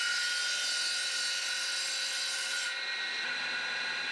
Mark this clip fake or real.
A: real